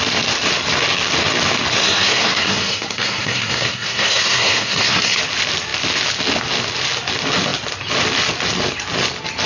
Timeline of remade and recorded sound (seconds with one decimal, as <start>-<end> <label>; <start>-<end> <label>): 0.0-1.7 recorded; 1.7-5.2 remade; 5.2-9.5 recorded